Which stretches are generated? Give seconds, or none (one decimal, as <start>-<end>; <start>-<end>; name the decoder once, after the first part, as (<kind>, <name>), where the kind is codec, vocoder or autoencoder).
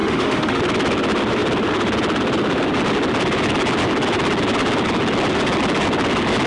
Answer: 0.0-0.6 (autoencoder, DAC-VAE)